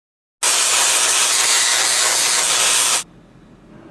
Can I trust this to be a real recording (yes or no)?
yes